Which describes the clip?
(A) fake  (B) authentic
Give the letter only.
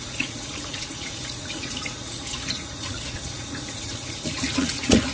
A